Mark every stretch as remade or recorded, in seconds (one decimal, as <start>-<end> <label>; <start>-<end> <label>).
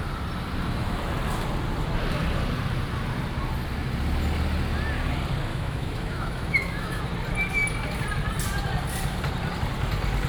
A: 0.0-5.5 recorded; 5.5-7.0 remade; 7.0-10.3 recorded